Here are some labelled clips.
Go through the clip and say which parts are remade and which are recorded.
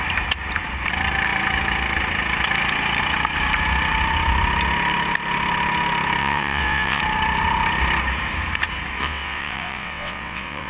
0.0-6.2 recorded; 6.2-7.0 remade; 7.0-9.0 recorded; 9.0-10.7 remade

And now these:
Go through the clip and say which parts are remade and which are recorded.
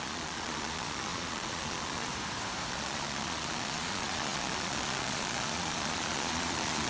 0.0-2.1 remade; 2.1-2.7 recorded; 2.7-6.9 remade